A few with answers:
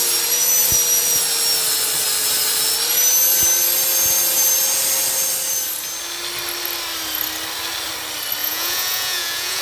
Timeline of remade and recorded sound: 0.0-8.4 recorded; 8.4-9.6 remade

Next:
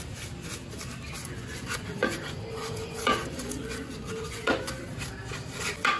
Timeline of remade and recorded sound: 0.0-1.2 recorded; 1.2-4.8 remade; 4.8-6.0 recorded

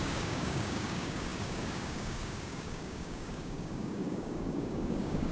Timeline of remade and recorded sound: 0.0-5.3 remade

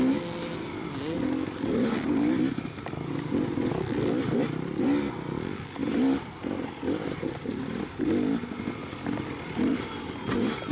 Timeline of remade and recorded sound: 0.0-10.7 recorded